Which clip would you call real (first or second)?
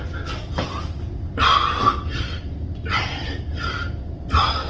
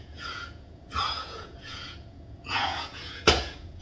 first